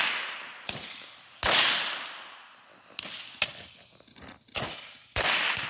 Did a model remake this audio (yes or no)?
no